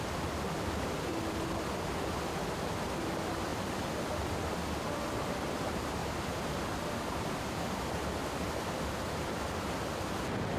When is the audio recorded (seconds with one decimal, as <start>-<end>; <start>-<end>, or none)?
0.0-1.1; 1.7-10.6